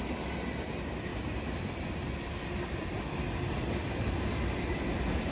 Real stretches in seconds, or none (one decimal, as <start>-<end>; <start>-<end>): 0.0-5.3